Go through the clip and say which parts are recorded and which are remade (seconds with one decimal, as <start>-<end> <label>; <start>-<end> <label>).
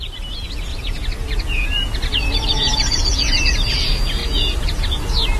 0.0-0.7 recorded; 0.7-3.8 remade; 3.8-4.2 recorded; 4.2-4.8 remade; 4.8-5.4 recorded